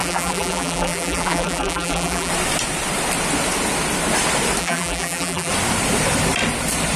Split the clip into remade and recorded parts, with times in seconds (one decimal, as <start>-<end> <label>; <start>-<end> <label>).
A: 0.0-2.3 remade; 2.3-4.6 recorded; 4.6-5.5 remade; 5.5-7.0 recorded